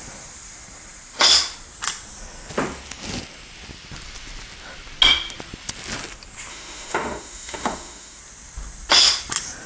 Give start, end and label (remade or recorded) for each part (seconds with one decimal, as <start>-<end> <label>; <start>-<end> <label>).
0.0-6.5 recorded; 6.5-8.2 remade; 8.2-9.7 recorded